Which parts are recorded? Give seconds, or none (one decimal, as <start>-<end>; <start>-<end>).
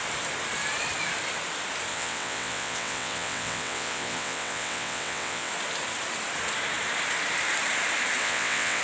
0.0-1.9; 5.5-8.2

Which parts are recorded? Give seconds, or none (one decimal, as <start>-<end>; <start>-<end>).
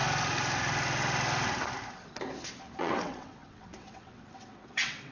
0.0-2.8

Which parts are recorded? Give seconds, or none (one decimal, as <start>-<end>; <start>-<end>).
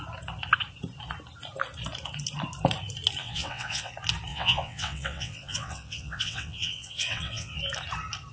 0.0-3.2; 3.9-4.3; 7.6-8.3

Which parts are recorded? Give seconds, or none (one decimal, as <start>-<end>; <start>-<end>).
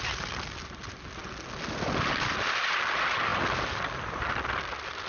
0.0-5.1